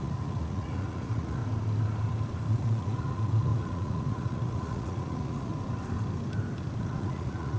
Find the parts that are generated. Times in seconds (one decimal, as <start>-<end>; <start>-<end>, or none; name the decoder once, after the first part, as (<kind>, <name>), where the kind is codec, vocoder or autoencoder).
0.0-1.4 (vocoder, Vocos); 2.5-5.5; 6.8-7.6

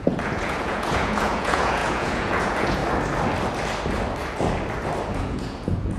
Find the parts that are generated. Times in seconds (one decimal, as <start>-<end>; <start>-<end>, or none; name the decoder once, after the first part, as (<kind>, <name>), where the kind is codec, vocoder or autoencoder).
0.0-2.8 (vocoder, Vocos); 5.1-6.0

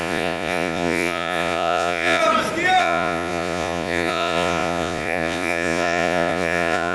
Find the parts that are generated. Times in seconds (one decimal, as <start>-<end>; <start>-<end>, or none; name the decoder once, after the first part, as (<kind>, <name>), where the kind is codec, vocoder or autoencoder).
0.0-2.2 (vocoder, Vocos); 2.8-6.9

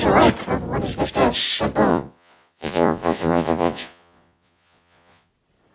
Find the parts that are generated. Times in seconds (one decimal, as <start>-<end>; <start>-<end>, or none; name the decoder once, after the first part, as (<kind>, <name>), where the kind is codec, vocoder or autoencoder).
1.9-5.3 (vocoder, Vocos)

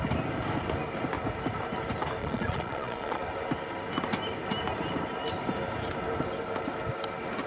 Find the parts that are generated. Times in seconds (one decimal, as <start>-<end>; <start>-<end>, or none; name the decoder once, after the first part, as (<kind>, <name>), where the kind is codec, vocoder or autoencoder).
2.2-3.2 (vocoder, Vocos)

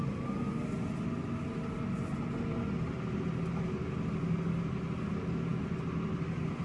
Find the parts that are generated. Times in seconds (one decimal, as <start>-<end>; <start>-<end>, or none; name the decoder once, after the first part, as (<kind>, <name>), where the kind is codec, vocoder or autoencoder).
none